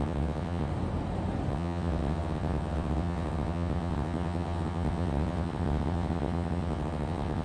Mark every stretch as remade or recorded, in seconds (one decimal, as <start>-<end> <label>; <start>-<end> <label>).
0.0-0.7 remade; 0.7-1.5 recorded; 1.5-7.4 remade